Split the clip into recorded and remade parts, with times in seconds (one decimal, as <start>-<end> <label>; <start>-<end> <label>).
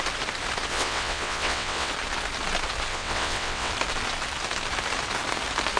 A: 0.0-0.7 recorded; 0.7-1.9 remade; 1.9-2.9 recorded; 2.9-3.7 remade; 3.7-5.8 recorded